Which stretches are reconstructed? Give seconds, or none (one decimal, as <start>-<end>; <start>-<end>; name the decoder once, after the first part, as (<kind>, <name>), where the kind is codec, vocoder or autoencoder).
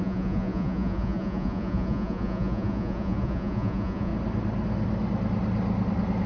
0.0-4.1 (vocoder, Vocos)